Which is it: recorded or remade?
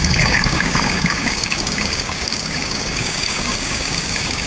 remade